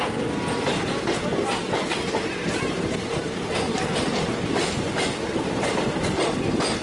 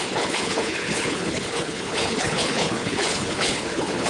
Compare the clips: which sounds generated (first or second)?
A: second